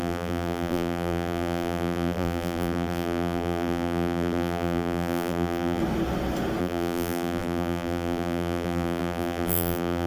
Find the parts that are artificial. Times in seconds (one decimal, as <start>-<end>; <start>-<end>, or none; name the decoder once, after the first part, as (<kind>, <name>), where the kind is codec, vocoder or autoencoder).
0.0-5.8 (vocoder, BigVGAN v2); 6.6-10.1